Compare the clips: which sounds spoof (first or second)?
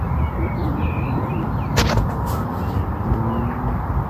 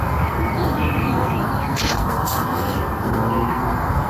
second